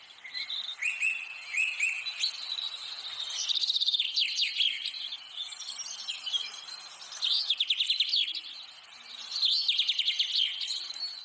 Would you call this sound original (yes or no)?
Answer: yes